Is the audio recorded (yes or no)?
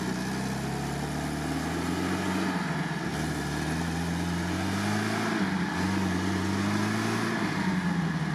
yes